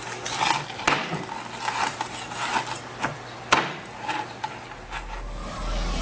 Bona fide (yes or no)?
yes